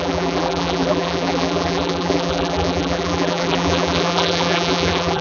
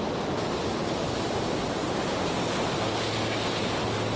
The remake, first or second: first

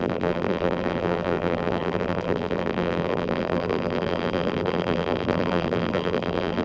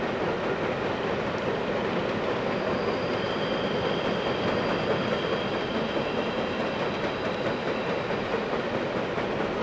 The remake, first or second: first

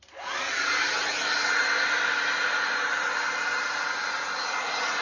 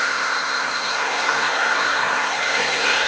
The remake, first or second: second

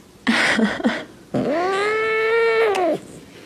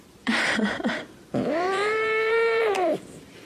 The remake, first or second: second